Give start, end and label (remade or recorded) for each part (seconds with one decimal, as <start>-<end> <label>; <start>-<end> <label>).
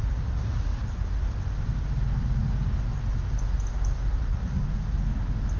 0.0-0.7 remade; 0.7-4.1 recorded; 4.1-4.6 remade; 4.6-5.6 recorded